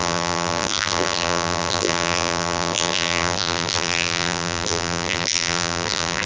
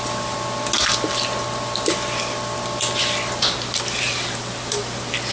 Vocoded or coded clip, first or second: first